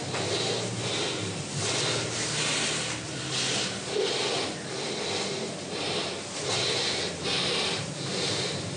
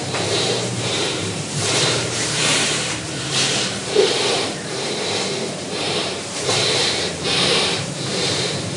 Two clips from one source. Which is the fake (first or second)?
second